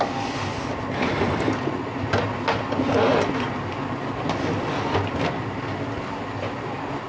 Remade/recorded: recorded